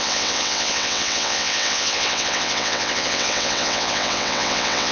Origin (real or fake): fake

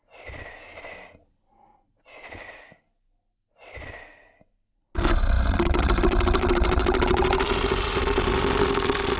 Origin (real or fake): real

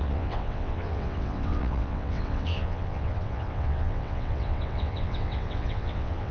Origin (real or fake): fake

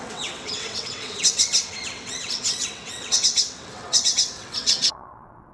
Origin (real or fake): fake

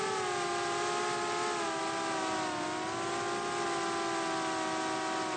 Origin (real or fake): real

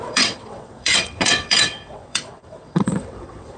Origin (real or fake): fake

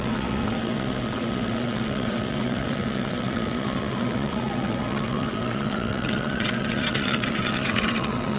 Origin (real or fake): fake